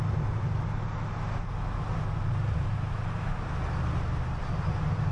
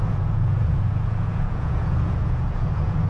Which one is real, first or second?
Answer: first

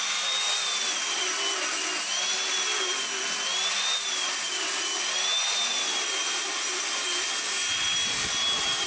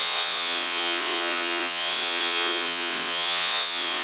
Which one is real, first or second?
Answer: first